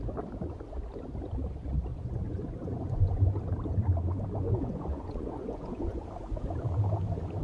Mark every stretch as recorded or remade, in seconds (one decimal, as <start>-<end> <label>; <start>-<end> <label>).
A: 0.0-1.9 recorded; 1.9-3.1 remade; 3.1-4.4 recorded; 4.4-6.0 remade; 6.0-7.4 recorded